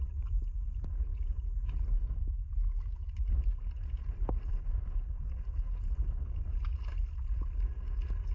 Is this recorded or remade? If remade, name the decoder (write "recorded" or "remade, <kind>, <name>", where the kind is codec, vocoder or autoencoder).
recorded